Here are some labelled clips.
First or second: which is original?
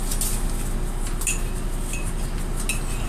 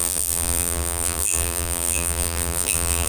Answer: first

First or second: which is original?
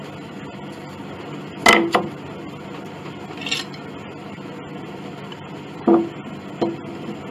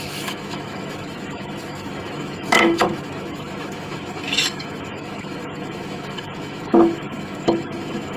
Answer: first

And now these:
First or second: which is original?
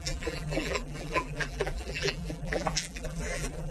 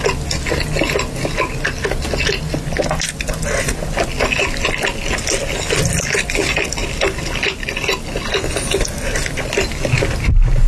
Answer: second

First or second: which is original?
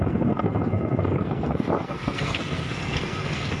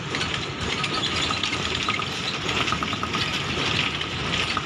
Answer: second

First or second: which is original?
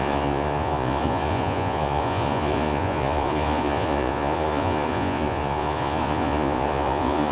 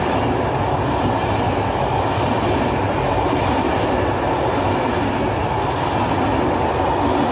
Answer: second